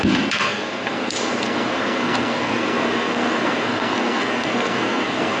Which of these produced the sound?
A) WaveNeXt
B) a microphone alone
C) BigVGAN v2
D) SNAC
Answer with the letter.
D